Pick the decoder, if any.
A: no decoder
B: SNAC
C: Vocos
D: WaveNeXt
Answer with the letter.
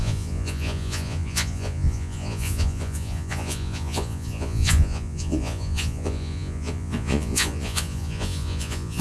C